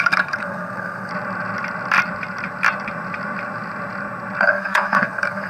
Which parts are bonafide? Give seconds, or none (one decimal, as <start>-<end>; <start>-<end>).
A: 1.1-4.4